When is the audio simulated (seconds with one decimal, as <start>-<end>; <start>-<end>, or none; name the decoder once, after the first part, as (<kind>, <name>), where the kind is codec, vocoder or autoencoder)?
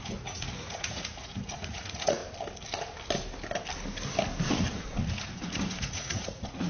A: 0.0-2.2 (vocoder, Vocos); 4.4-6.7